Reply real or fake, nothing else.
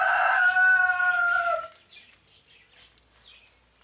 real